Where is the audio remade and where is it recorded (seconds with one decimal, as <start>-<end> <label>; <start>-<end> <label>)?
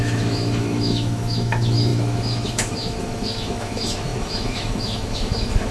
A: 0.0-5.7 remade